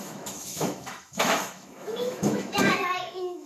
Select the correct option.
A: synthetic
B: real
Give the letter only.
A